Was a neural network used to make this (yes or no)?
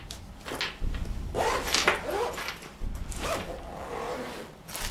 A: no